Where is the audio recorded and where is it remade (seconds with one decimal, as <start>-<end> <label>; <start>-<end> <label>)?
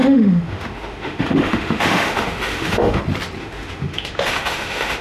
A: 0.0-3.0 remade; 3.0-3.4 recorded; 3.4-5.0 remade